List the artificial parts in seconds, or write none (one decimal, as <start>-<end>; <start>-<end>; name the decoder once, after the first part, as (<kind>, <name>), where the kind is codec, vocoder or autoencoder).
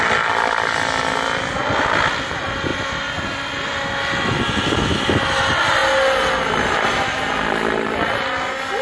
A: none